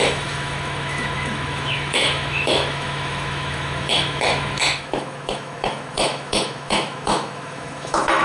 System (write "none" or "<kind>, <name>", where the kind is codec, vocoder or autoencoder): autoencoder, DAC-VAE